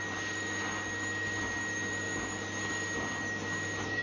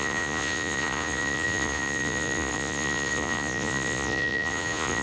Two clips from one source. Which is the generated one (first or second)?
second